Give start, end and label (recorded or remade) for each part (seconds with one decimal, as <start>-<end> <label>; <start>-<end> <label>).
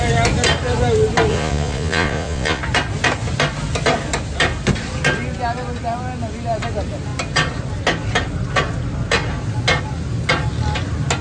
0.0-1.3 recorded; 1.3-2.6 remade; 2.6-11.2 recorded